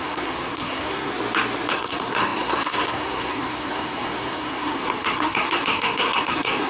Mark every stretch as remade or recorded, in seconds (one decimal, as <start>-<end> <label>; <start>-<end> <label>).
0.0-1.1 remade; 1.1-1.7 recorded; 1.7-6.7 remade